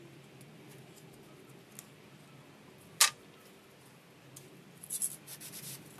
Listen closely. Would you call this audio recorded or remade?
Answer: recorded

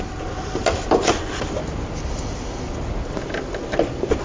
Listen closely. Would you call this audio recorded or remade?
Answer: recorded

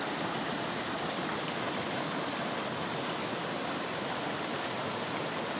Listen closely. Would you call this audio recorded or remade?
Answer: recorded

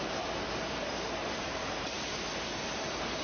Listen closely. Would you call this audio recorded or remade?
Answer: remade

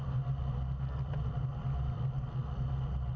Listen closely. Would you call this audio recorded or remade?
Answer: recorded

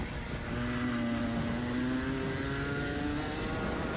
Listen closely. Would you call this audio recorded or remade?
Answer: recorded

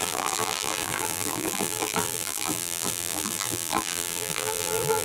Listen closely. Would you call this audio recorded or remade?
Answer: remade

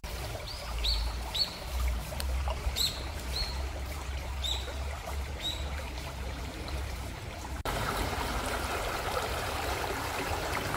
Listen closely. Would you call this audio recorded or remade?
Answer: remade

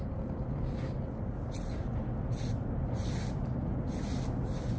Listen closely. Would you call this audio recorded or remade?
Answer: recorded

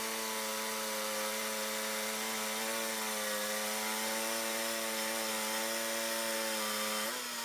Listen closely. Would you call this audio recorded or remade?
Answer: remade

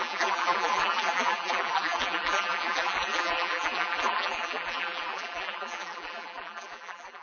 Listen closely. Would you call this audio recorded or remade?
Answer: remade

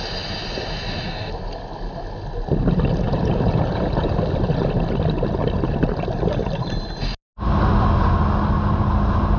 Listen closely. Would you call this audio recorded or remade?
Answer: recorded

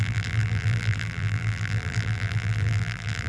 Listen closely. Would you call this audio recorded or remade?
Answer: remade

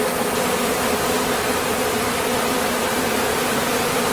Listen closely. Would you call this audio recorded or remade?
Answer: recorded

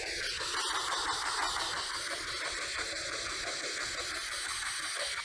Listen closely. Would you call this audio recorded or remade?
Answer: recorded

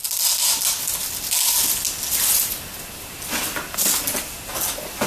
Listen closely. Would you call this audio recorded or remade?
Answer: recorded